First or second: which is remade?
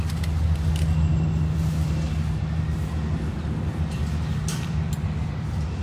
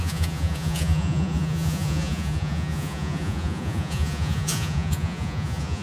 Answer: second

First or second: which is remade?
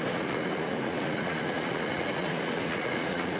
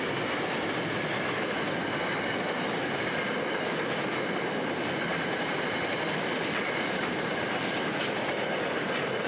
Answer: first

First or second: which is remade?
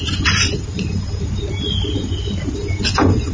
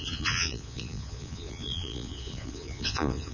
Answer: second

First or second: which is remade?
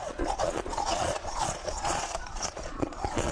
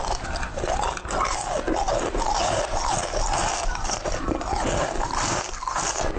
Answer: first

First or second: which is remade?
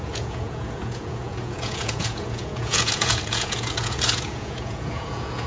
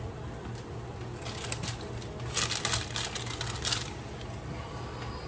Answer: first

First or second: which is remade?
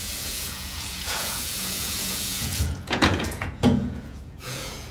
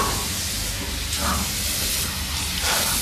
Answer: first